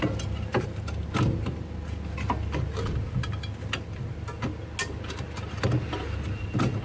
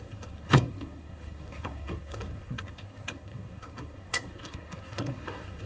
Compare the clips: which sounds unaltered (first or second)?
first